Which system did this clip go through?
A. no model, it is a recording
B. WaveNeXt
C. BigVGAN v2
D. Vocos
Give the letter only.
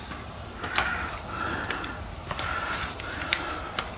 A